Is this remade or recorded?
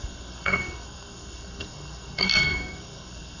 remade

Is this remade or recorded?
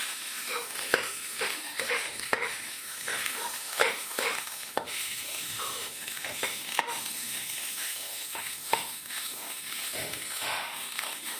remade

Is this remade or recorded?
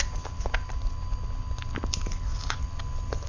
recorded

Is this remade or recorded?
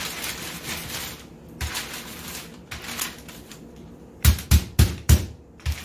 remade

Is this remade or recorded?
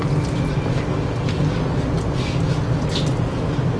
recorded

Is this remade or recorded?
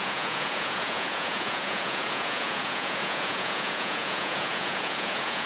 remade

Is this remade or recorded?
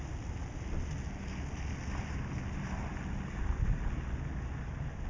recorded